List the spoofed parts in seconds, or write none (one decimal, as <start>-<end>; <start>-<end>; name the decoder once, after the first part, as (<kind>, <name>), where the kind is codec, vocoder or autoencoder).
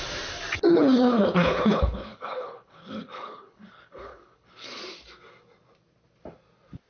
0.7-4.8 (codec, HILCodec)